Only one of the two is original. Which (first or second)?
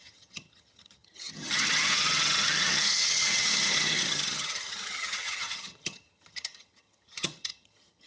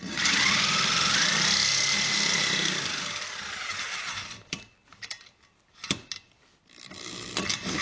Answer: second